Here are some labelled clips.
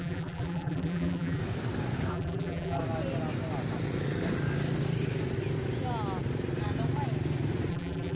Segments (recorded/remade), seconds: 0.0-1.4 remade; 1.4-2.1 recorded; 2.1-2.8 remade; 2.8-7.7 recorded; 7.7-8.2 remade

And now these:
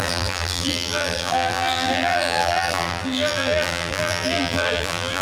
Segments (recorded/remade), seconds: 0.0-5.2 remade